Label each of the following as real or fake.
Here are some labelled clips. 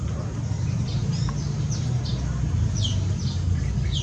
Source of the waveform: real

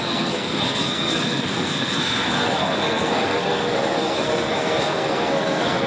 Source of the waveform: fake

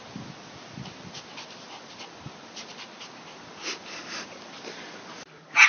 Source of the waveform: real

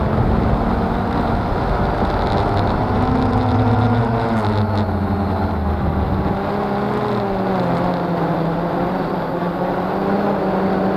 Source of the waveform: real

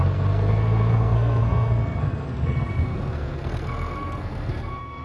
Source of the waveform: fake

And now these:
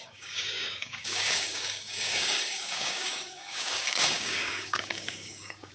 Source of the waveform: fake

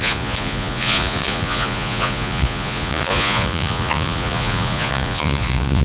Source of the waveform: fake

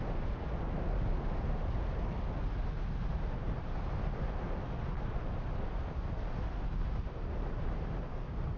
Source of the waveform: real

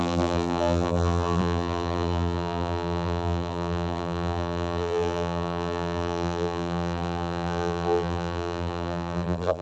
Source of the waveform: fake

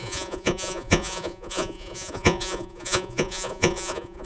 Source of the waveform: fake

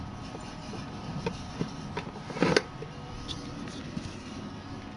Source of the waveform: fake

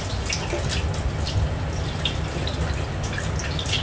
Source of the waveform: real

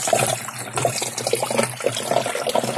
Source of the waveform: real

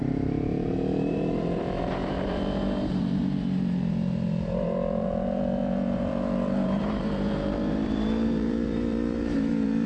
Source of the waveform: fake